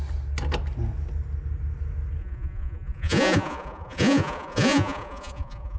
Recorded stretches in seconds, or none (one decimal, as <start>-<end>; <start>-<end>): 0.0-2.2